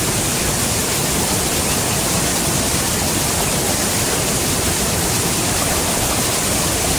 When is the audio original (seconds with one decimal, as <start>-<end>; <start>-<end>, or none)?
0.0-7.0